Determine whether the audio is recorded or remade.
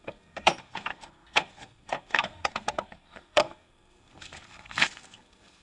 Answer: remade